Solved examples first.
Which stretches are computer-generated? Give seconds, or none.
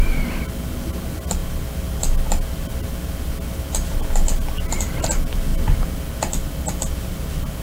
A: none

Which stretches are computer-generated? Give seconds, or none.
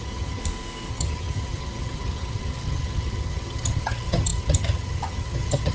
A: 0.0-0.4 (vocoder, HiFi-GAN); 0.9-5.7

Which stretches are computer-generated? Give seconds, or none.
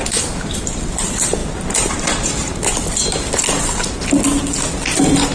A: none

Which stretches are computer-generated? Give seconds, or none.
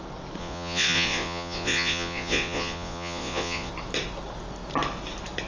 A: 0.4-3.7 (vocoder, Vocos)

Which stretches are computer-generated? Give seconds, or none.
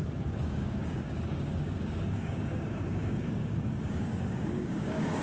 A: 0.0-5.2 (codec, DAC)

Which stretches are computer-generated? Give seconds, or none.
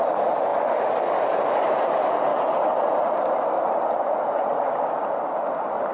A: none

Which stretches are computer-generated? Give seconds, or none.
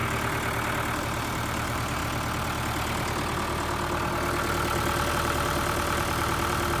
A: 1.0-2.0 (vocoder, BigVGAN v2); 5.1-6.8